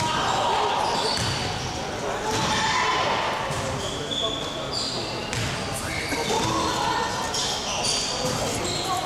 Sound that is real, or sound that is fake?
real